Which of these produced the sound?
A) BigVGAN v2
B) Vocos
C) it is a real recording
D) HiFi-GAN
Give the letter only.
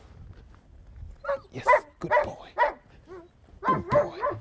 C